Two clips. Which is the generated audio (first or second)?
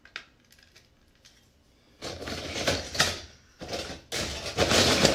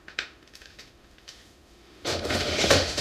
second